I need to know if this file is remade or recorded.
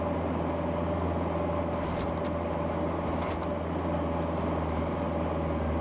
recorded